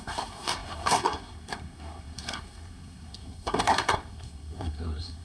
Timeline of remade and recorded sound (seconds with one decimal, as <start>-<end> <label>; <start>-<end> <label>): 0.0-5.2 remade